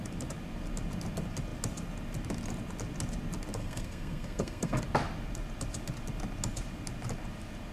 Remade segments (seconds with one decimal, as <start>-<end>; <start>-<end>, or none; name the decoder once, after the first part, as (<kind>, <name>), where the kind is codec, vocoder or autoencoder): 3.6-4.8 (codec, SNAC)